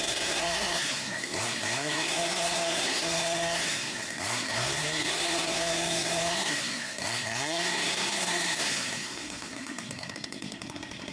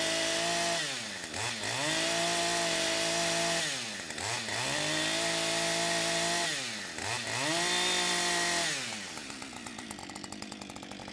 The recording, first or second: second